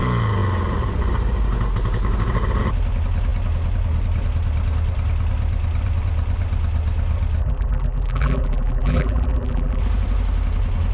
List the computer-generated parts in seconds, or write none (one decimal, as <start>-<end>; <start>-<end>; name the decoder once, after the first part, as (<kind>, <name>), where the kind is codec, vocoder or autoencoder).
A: 7.4-9.8 (vocoder, BigVGAN v2)

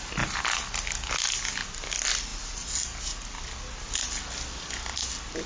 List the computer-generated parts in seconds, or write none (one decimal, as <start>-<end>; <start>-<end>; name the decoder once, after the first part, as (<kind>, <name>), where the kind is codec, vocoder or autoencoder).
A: none

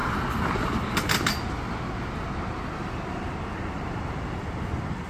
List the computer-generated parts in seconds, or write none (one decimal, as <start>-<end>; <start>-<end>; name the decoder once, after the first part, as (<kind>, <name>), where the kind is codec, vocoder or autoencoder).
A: none

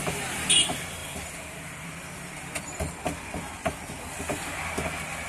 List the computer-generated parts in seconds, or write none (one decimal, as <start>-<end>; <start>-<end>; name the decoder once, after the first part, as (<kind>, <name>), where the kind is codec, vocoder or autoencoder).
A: 1.0-4.2 (vocoder, BigVGAN v2)

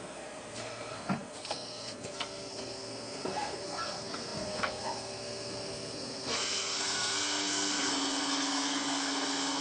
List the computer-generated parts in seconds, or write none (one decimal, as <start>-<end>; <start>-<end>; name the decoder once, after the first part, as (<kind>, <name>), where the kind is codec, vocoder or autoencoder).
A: 0.0-9.6 (codec, SNAC)

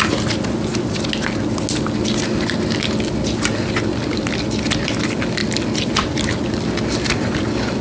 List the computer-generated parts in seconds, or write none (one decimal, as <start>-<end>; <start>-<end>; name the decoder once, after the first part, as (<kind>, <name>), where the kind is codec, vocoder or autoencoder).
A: none